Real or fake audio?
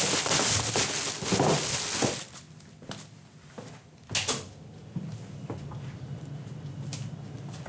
real